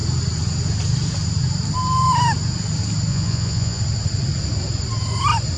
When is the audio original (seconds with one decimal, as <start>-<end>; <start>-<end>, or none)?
0.0-3.1; 3.8-5.6